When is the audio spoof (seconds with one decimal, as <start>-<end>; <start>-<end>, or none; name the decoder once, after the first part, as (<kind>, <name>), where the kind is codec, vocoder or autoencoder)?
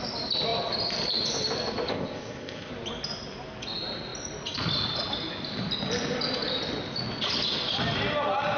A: 1.9-2.7 (codec, ZipCodec)